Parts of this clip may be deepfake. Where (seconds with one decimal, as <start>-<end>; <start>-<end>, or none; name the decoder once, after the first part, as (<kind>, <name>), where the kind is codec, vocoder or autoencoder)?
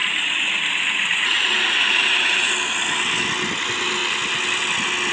0.0-2.5 (vocoder, Vocos)